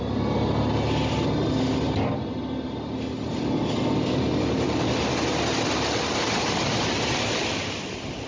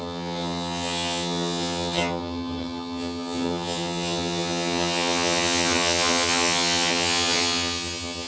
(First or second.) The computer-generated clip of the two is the second